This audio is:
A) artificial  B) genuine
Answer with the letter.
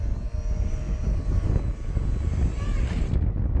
B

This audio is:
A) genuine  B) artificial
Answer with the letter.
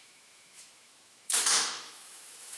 B